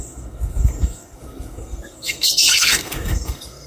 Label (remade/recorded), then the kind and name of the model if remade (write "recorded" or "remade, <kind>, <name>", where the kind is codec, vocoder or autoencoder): remade, codec, SNAC